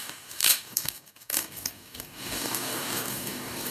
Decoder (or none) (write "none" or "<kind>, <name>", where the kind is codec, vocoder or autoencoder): codec, DAC